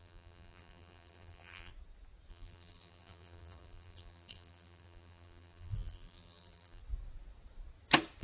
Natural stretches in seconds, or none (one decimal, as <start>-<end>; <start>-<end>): 1.7-2.3; 6.8-8.2

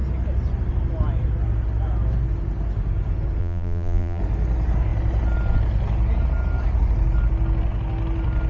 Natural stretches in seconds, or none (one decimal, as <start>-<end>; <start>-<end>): 0.0-3.4; 4.2-8.5

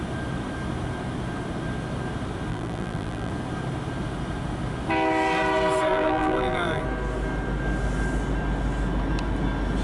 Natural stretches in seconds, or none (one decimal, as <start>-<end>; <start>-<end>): 0.0-2.5; 3.3-5.9; 6.8-9.8

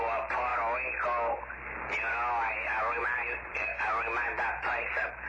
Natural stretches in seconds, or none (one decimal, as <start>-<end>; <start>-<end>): 0.5-3.0; 3.7-4.5

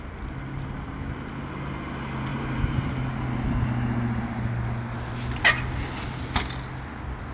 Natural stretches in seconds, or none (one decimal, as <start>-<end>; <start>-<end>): 0.0-2.3; 2.9-7.3